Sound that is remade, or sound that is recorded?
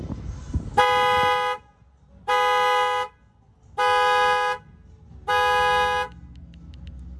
recorded